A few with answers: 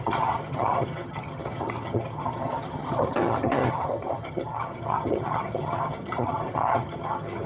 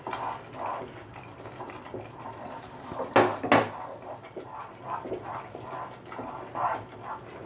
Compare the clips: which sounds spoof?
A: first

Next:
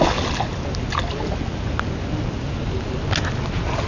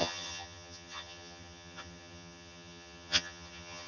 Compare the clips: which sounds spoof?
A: second